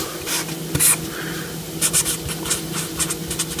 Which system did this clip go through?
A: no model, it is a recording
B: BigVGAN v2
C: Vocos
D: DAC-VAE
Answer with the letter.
A